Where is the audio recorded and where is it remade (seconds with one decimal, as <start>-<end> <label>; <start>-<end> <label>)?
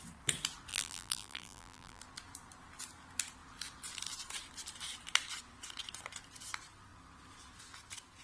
0.0-0.7 recorded; 0.7-2.0 remade; 2.0-8.2 recorded